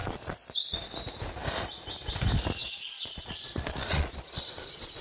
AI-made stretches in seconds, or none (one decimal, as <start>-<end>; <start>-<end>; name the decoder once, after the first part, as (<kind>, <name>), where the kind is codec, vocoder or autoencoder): 0.0-0.9 (vocoder, Vocos); 2.6-5.0